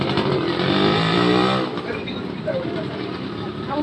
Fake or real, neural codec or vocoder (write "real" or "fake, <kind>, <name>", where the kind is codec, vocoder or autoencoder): fake, vocoder, BigVGAN v2